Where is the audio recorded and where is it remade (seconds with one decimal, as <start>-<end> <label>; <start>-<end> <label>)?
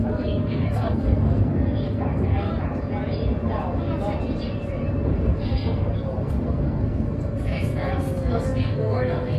0.0-2.5 remade; 2.5-5.1 recorded; 5.1-9.4 remade